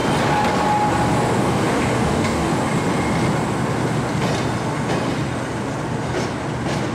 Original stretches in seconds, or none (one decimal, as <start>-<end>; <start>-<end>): 0.0-1.4; 2.5-6.9